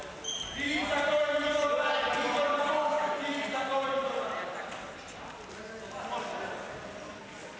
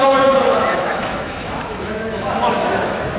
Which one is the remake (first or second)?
second